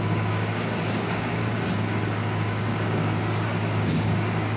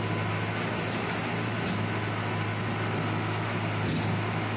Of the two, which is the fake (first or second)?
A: first